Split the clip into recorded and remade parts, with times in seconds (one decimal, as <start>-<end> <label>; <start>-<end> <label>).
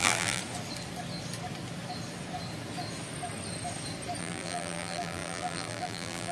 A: 0.0-0.4 remade; 0.4-4.2 recorded; 4.2-6.3 remade